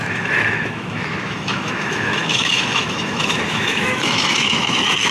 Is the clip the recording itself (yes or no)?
no